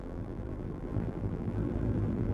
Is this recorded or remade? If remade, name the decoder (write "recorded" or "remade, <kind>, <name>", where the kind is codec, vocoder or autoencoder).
remade, vocoder, BigVGAN v2